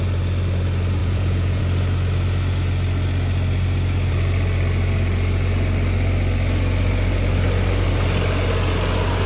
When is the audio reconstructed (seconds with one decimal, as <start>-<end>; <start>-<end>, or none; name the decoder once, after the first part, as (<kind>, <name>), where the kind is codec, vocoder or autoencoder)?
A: 1.0-1.6 (vocoder, Vocos)